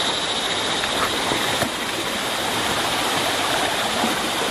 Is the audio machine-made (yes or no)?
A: no